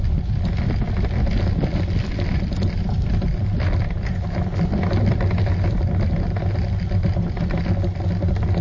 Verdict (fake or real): real